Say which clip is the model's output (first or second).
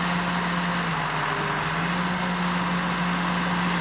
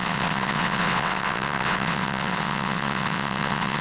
second